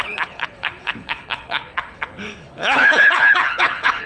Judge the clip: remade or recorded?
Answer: remade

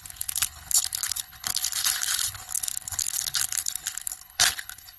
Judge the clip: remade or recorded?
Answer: remade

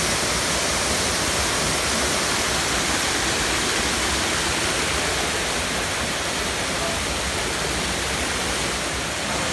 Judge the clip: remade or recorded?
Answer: recorded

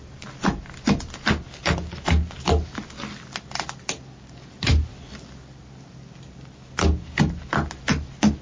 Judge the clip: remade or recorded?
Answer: recorded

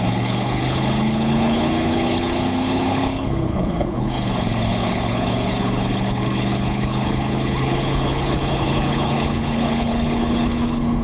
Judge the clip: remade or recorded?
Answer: remade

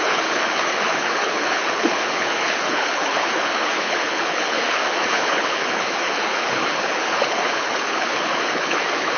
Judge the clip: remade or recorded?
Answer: remade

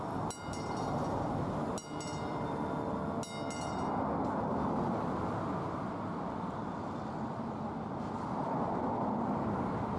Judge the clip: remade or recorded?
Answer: recorded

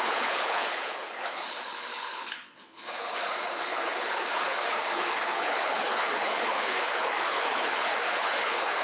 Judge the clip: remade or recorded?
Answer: remade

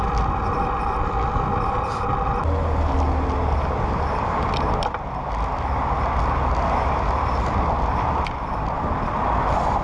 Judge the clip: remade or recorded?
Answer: recorded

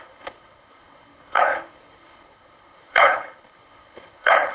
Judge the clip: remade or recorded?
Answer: remade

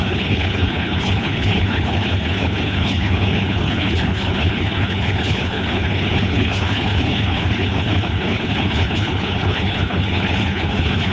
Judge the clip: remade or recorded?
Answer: remade